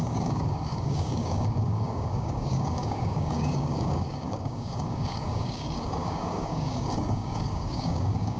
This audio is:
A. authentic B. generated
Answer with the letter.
B